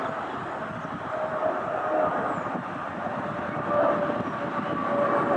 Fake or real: real